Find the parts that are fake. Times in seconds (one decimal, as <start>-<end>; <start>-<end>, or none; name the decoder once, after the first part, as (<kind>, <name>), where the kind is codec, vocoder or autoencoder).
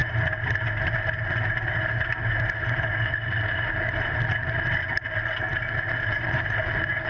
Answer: none